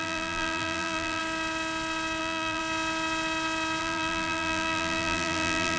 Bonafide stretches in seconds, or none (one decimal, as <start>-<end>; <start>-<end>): 1.2-2.2; 2.6-3.8